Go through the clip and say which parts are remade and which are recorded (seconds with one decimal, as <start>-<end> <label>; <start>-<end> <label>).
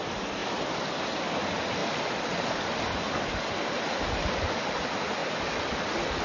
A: 0.0-0.4 recorded; 0.4-1.2 remade; 1.2-1.8 recorded; 1.8-2.5 remade; 2.5-6.2 recorded